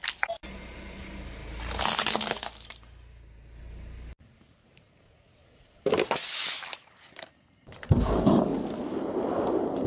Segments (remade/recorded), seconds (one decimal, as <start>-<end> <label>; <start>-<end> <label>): 0.0-3.6 recorded; 3.6-8.5 remade; 8.5-9.4 recorded; 9.4-9.9 remade